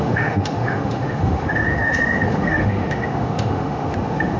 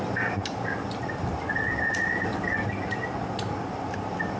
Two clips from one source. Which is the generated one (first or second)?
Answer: first